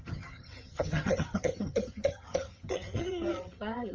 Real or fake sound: fake